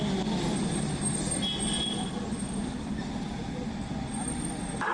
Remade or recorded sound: recorded